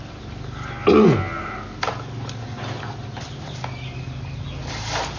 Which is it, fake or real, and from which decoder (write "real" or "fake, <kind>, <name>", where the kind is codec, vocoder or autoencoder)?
real